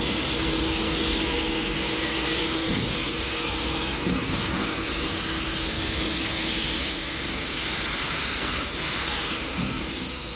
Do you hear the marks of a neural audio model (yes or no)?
yes